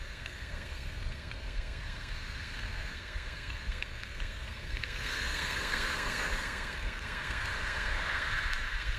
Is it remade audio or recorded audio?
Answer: remade